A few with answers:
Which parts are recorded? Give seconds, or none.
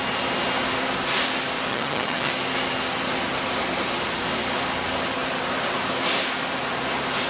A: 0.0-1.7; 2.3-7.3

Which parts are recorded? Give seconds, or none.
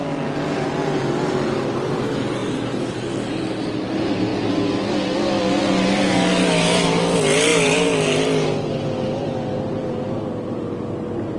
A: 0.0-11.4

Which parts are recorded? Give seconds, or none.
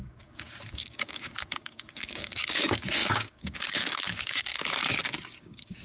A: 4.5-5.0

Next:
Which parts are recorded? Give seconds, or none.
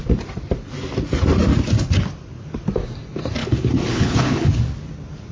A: 0.0-3.4; 4.5-5.3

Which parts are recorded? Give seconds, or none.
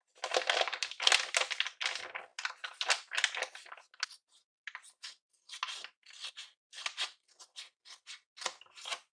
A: 0.0-9.1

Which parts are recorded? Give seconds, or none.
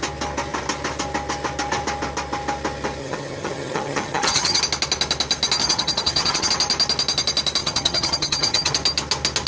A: 0.0-3.0; 4.6-5.6; 6.5-7.6; 8.7-9.5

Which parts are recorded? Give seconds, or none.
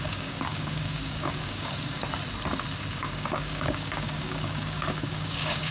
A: 2.0-2.9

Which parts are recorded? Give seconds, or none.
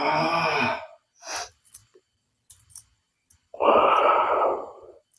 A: 0.0-5.2